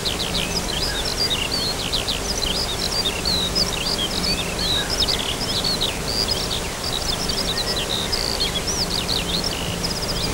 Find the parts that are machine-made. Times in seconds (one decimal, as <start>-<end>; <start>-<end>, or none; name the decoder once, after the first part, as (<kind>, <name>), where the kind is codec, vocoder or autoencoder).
none

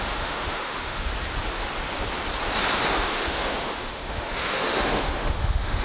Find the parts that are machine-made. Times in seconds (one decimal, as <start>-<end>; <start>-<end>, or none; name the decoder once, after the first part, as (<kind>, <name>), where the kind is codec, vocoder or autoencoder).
0.0-1.1 (autoencoder, DAC-VAE); 2.9-5.8

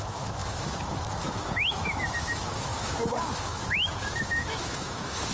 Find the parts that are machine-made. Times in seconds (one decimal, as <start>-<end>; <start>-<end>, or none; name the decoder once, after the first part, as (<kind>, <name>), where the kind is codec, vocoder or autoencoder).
0.0-5.3 (autoencoder, DAC-VAE)